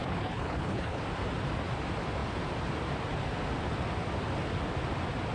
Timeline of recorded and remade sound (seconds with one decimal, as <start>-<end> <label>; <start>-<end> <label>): 0.0-1.0 remade; 1.0-5.3 recorded